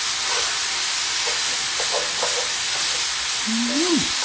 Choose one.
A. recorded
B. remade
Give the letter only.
A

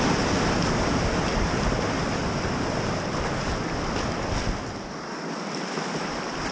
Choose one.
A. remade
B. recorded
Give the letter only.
B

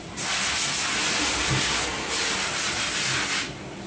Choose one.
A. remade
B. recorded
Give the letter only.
B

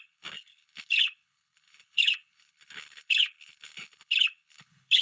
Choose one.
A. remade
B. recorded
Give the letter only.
A